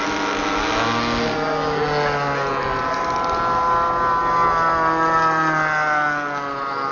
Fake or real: real